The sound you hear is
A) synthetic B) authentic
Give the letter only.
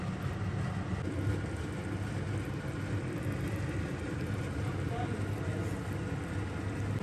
B